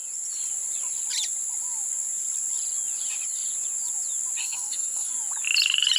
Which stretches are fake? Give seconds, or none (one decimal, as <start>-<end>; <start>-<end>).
4.4-5.1